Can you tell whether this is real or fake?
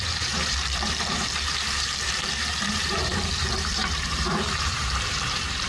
fake